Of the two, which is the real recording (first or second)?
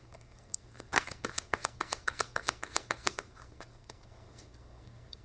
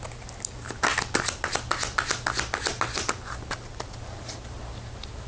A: second